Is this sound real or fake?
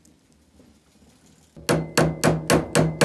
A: real